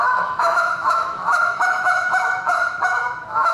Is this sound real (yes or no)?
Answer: no